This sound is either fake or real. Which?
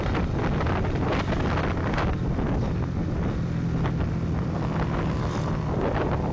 real